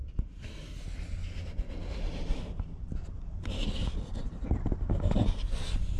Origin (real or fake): real